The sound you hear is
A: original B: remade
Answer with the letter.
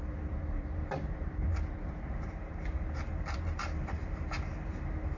B